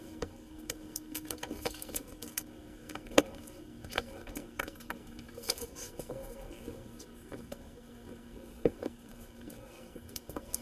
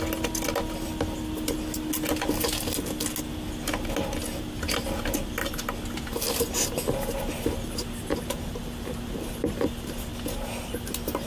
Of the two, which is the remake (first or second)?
first